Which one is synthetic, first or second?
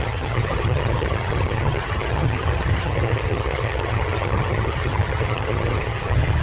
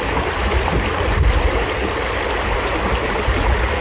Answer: first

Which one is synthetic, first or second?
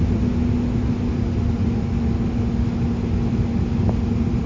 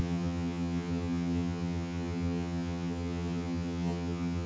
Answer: second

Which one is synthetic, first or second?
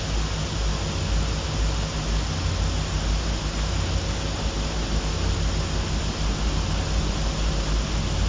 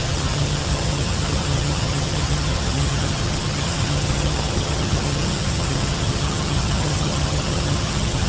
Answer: second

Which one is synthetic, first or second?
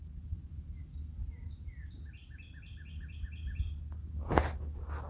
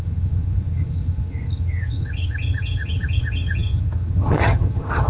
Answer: second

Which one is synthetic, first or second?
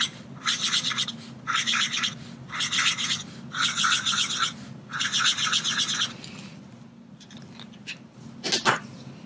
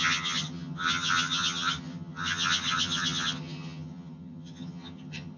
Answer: second